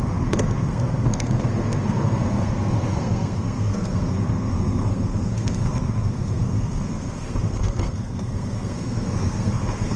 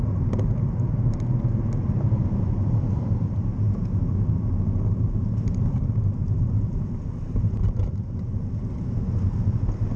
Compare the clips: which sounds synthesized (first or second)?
first